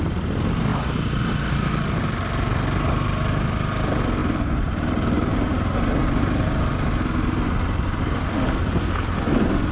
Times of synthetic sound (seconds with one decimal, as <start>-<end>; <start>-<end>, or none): 0.7-1.2; 4.2-6.2